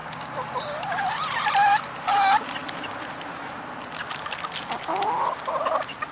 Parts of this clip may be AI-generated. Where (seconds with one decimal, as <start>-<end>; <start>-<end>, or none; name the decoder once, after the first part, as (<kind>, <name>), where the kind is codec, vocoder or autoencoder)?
none